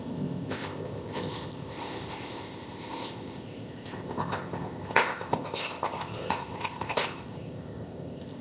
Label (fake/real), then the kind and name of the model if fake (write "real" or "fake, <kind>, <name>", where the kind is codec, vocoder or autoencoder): fake, codec, ZipCodec